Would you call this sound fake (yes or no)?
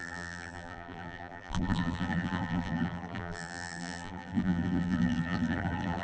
yes